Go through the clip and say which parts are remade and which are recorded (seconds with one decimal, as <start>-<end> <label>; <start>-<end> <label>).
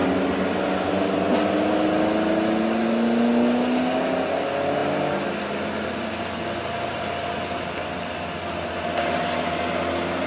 0.0-10.3 recorded